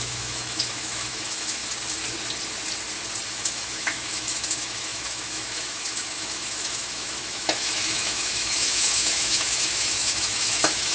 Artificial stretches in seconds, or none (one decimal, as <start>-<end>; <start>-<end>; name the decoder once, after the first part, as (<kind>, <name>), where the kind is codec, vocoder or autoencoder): 0.0-1.6 (autoencoder, DAC-VAE); 3.3-10.9